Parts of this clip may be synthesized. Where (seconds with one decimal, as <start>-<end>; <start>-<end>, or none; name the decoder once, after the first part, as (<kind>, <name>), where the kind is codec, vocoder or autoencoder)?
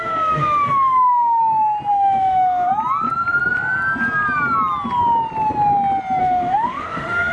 0.0-1.4 (autoencoder, DAC-VAE); 1.9-2.7; 6.2-7.3